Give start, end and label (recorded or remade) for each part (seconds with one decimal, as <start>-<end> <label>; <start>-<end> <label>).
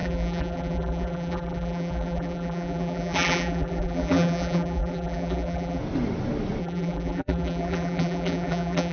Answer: 0.0-5.8 remade; 5.8-6.6 recorded; 6.6-8.9 remade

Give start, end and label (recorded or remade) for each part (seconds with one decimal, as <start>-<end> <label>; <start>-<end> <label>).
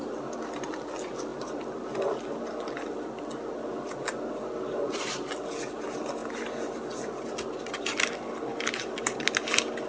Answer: 0.0-9.9 recorded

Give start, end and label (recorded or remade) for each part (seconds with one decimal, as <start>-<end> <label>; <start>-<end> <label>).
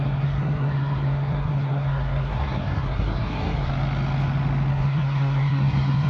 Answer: 0.0-3.7 remade; 3.7-4.7 recorded; 4.7-6.1 remade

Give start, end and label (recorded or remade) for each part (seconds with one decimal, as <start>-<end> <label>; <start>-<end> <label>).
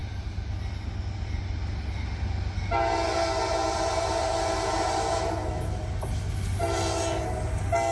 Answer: 0.0-7.9 recorded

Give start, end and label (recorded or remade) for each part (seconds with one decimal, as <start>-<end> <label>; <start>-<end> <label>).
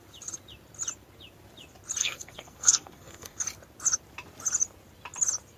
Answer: 0.0-2.0 recorded; 2.0-3.4 remade; 3.4-5.6 recorded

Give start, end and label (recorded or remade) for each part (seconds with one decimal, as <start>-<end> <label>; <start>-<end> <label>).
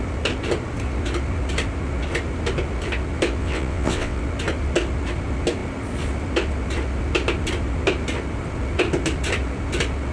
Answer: 0.0-3.4 recorded; 3.4-4.2 remade; 4.2-10.1 recorded